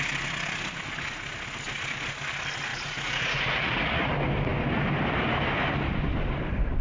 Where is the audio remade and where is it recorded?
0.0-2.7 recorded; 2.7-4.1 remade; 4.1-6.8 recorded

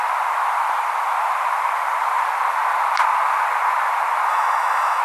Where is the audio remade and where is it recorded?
0.0-4.3 recorded; 4.3-5.0 remade

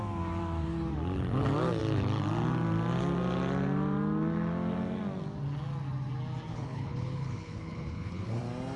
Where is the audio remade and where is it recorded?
0.0-6.5 recorded; 6.5-8.4 remade; 8.4-8.8 recorded

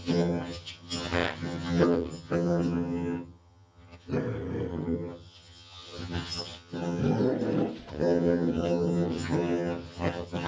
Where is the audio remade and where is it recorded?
0.0-4.1 remade; 4.1-4.7 recorded; 4.7-7.0 remade; 7.0-7.9 recorded; 7.9-10.5 remade